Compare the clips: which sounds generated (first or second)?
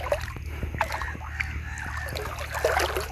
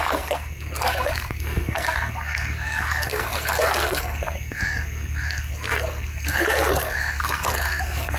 second